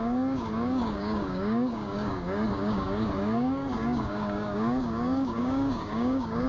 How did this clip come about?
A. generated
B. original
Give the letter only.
A